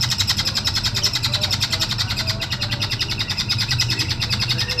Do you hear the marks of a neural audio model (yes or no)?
yes